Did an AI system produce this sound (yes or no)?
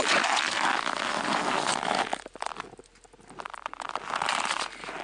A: no